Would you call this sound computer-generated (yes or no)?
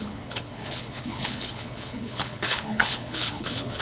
yes